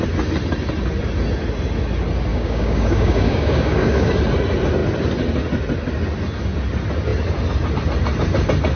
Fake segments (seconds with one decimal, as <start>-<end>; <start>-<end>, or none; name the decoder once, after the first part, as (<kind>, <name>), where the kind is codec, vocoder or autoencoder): 2.3-4.1 (codec, DAC)